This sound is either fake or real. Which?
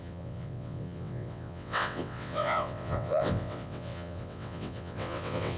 fake